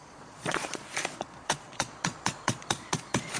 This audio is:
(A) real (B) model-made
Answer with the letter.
B